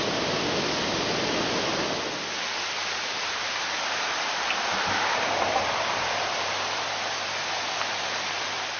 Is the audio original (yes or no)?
yes